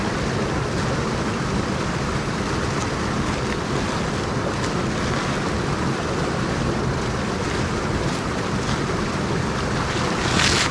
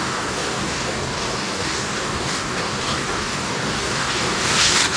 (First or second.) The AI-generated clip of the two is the second